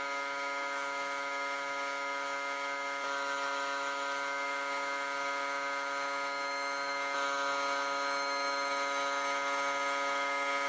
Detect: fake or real fake